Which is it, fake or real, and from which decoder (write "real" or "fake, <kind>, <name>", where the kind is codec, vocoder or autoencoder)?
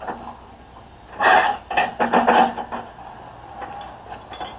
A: real